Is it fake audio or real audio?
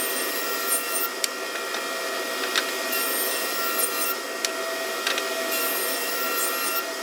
real